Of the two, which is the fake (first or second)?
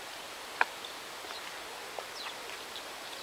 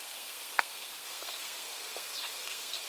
second